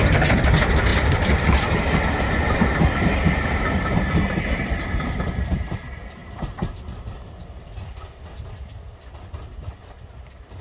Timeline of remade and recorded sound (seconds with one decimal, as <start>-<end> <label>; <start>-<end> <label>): 0.0-10.6 recorded